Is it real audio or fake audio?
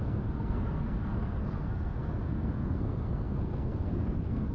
fake